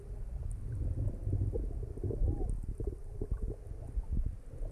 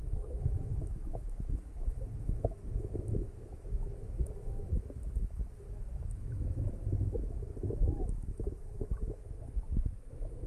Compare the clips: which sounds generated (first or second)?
second